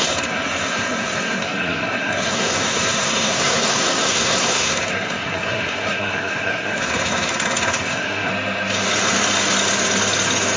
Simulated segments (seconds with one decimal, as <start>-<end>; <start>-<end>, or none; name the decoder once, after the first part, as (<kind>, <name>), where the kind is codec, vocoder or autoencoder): 0.0-8.3 (codec, SNAC)

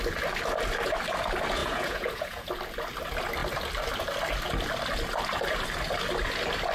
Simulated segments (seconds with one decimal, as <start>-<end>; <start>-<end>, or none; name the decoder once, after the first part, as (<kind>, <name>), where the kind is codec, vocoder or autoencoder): 1.6-2.5 (vocoder, Vocos)

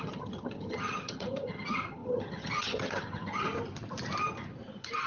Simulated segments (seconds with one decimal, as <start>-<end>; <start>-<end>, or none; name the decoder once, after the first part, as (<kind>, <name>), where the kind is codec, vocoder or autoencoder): 0.0-3.4 (vocoder, HiFi-GAN)

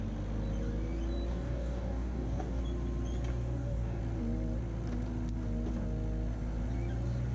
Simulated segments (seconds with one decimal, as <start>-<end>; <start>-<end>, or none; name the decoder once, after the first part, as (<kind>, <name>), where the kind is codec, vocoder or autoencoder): 1.3-2.6 (codec, DAC); 3.3-4.0

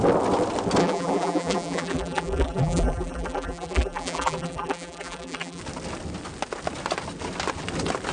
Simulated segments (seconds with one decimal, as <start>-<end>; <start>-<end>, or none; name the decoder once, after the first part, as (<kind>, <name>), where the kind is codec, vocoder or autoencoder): 0.8-5.6 (vocoder, BigVGAN v2)

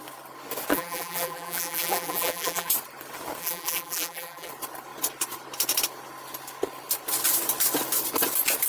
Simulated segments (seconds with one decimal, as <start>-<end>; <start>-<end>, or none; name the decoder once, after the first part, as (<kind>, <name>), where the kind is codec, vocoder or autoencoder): 0.7-2.7 (vocoder, BigVGAN v2); 3.4-4.5

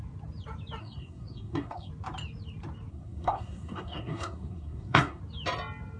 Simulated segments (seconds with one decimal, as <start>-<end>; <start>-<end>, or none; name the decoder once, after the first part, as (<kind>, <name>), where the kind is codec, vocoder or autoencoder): 0.8-1.9 (codec, SNAC); 2.9-5.2

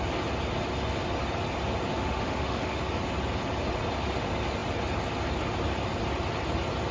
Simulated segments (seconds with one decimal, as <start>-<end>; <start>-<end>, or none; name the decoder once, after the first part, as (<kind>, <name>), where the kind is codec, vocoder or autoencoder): 1.9-2.8 (autoencoder, DAC-VAE)